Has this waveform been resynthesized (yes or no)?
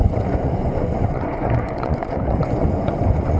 yes